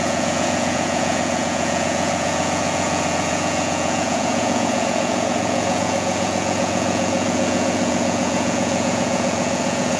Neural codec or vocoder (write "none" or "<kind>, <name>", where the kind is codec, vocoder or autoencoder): vocoder, Vocos